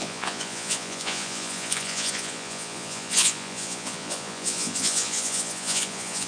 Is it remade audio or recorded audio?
remade